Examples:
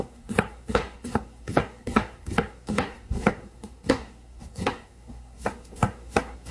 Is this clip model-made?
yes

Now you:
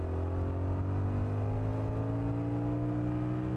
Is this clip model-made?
no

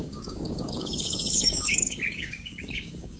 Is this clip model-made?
yes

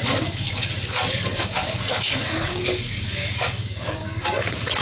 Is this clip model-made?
yes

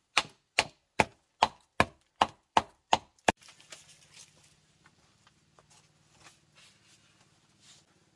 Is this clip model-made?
no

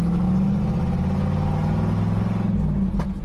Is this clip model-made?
no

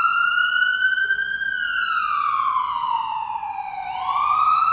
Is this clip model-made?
no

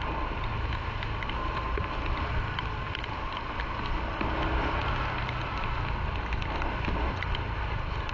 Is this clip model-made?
no